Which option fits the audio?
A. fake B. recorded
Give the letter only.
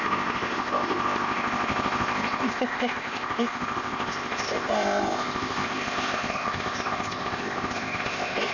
A